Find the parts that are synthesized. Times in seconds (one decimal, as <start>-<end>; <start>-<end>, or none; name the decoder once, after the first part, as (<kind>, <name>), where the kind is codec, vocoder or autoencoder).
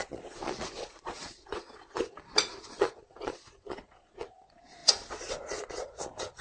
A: 0.0-6.4 (vocoder, Vocos)